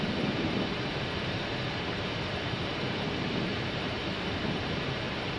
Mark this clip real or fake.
fake